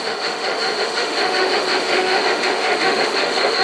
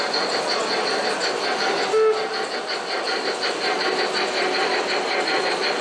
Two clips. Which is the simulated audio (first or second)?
first